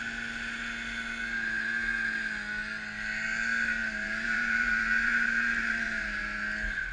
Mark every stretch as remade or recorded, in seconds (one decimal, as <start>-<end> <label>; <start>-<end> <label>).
0.0-3.8 recorded; 3.8-6.2 remade; 6.2-6.9 recorded